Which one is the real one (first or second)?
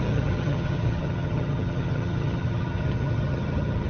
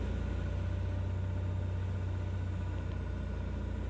second